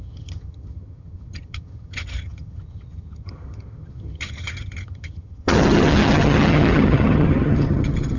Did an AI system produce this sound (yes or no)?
yes